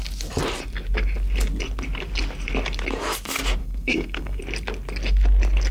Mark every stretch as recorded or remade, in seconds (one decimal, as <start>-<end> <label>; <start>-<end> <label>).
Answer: 0.0-3.6 recorded; 3.6-4.4 remade; 4.4-5.7 recorded